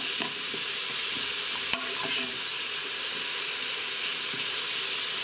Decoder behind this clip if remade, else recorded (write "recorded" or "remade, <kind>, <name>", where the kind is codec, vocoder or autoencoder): remade, vocoder, BigVGAN v2